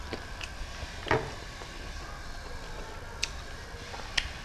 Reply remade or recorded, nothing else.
recorded